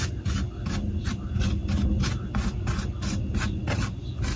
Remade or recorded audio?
recorded